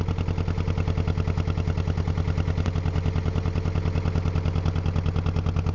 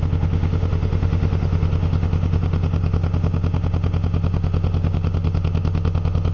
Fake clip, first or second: second